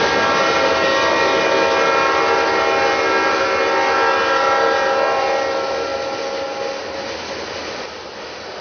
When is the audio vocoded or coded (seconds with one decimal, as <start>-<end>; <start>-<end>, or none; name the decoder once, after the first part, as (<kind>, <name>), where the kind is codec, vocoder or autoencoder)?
none